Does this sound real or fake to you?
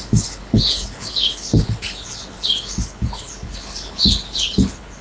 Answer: fake